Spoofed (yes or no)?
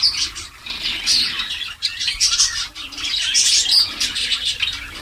no